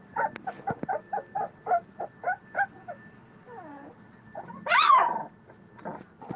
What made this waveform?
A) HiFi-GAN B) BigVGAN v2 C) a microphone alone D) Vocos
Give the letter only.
C